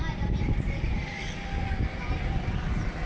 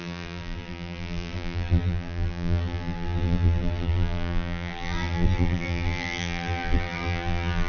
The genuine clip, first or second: first